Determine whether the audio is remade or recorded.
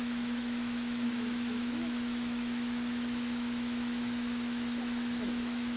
remade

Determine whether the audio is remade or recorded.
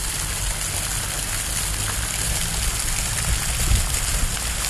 recorded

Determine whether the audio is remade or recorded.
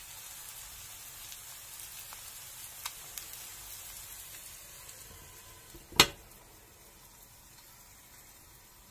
recorded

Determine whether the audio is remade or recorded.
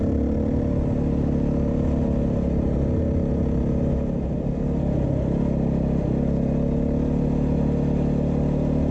recorded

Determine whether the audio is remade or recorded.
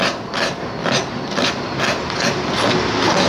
recorded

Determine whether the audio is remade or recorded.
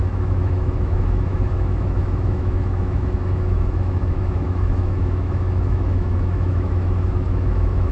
remade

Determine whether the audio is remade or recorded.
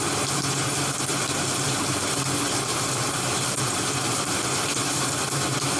recorded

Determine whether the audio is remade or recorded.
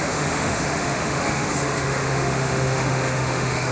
remade